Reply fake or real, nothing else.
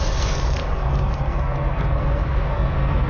fake